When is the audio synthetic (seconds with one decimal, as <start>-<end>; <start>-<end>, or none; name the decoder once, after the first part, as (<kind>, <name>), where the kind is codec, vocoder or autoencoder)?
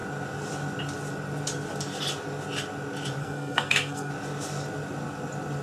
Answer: 3.2-4.1 (codec, SNAC)